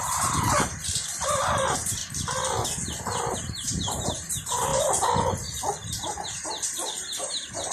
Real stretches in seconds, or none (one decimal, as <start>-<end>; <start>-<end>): 2.0-3.4; 4.7-5.9